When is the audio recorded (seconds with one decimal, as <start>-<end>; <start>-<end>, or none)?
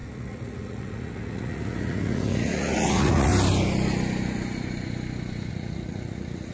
3.3-5.5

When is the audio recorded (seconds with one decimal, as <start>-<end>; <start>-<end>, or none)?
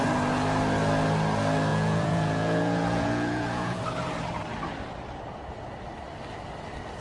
0.0-1.7; 3.8-7.0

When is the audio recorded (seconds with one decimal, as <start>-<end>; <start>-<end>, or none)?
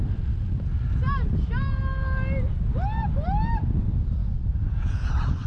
0.0-4.2; 5.1-5.5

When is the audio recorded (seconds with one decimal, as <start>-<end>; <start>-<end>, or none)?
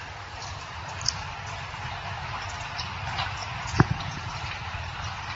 0.0-3.4; 4.3-5.3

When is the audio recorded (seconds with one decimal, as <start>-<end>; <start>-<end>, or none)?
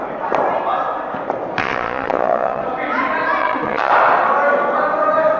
0.0-1.6; 2.6-3.4; 3.9-5.4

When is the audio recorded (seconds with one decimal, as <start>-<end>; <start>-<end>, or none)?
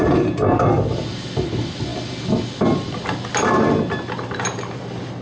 0.0-5.2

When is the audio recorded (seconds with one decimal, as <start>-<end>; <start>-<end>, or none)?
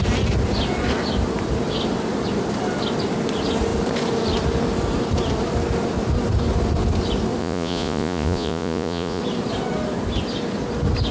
0.0-7.4; 9.2-11.1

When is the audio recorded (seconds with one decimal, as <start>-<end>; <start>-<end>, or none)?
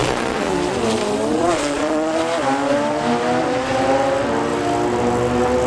0.5-1.3; 2.2-5.7